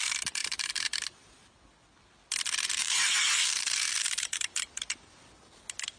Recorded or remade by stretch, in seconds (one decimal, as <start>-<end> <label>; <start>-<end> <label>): 0.0-0.4 recorded; 0.4-1.6 remade; 1.6-2.8 recorded; 2.8-4.7 remade; 4.7-6.0 recorded